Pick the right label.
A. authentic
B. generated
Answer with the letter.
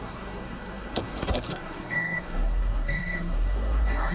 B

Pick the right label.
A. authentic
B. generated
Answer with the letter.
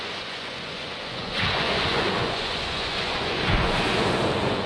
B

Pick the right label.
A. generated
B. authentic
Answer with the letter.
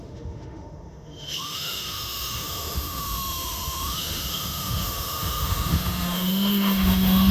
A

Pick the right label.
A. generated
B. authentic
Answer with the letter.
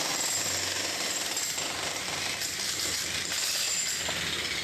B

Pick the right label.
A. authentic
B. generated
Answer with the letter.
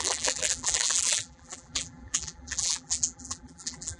B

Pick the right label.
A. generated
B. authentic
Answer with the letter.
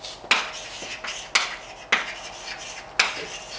B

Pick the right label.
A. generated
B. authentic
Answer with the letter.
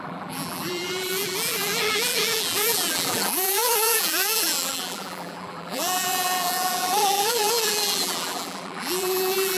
A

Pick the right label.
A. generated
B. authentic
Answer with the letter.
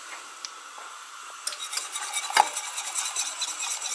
B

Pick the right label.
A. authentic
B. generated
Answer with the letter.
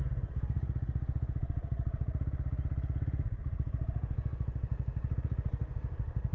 A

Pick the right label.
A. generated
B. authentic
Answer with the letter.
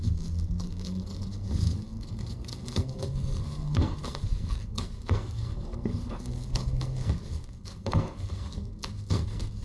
A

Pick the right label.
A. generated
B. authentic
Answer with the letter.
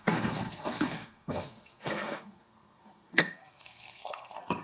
A